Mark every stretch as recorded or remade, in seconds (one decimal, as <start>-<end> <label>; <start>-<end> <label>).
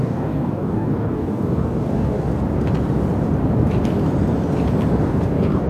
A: 0.0-2.3 remade; 2.3-5.0 recorded; 5.0-5.7 remade